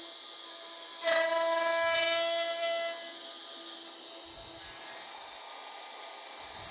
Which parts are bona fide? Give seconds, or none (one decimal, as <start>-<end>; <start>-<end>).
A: 0.0-6.7